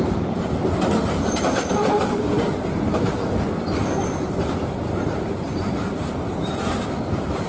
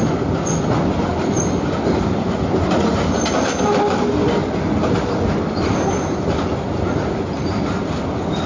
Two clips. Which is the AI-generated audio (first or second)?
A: first